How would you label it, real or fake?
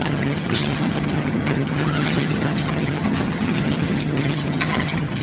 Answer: fake